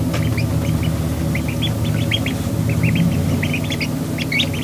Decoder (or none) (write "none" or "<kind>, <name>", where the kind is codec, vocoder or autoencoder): none